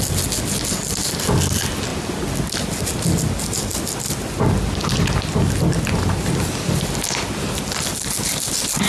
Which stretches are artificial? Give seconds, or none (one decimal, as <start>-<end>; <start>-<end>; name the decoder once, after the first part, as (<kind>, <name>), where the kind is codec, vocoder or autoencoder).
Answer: none